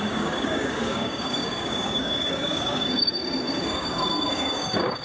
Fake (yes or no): yes